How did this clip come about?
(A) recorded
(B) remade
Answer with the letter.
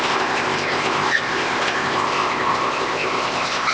B